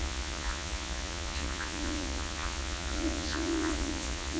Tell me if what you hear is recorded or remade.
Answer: remade